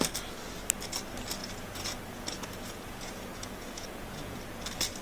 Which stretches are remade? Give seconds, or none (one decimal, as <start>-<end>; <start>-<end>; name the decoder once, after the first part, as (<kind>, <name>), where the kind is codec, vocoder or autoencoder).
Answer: 1.4-4.4 (vocoder, Vocos)